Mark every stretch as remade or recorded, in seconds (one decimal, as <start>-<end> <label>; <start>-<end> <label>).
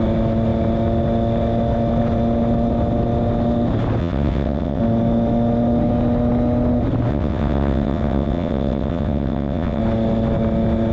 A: 0.0-4.0 recorded; 4.0-4.8 remade; 4.8-7.1 recorded; 7.1-9.8 remade; 9.8-10.9 recorded